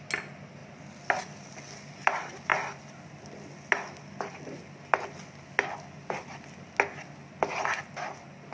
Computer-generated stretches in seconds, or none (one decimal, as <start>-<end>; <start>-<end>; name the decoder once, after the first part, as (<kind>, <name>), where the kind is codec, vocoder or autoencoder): none